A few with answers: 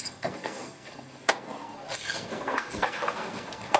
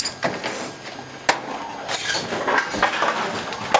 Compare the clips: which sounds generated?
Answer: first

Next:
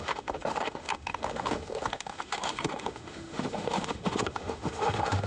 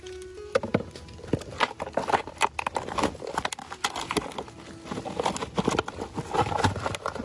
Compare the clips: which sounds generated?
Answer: first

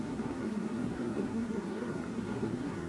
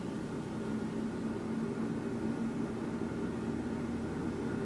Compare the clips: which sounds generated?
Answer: first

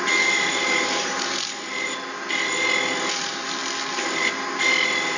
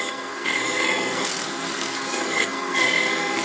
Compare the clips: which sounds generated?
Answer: second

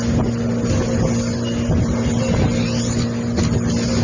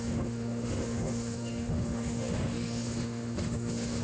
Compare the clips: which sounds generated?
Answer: second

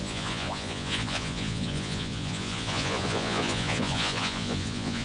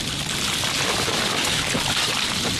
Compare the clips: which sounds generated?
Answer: first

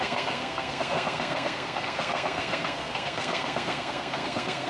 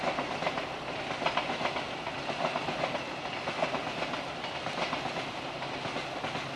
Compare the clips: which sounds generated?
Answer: first